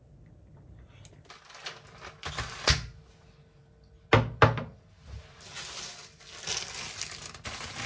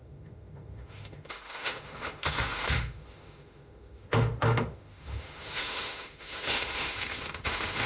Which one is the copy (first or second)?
second